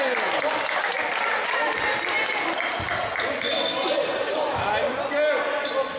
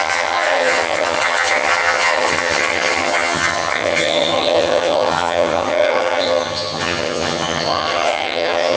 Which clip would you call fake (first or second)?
second